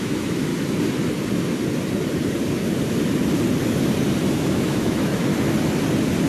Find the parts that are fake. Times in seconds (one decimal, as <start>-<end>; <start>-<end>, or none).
0.0-0.5; 4.3-5.3